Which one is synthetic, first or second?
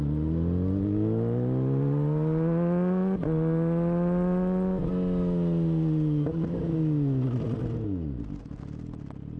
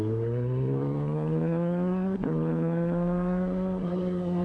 second